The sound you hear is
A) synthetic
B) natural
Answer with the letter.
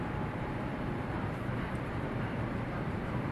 A